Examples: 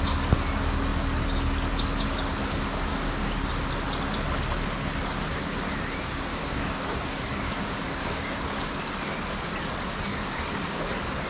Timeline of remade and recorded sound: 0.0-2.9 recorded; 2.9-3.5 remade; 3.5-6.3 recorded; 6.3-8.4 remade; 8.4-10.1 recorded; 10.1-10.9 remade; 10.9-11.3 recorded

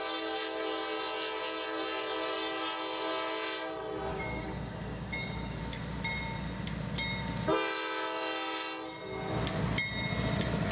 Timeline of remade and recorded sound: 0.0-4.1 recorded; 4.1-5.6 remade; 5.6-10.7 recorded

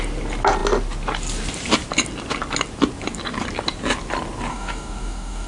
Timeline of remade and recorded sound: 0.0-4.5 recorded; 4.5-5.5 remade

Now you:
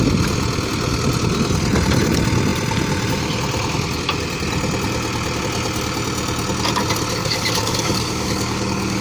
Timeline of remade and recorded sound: 0.0-7.2 recorded; 7.2-9.0 remade